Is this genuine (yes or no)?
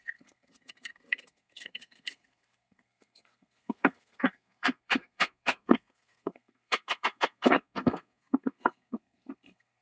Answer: no